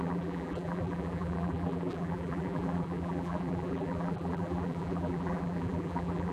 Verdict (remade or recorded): remade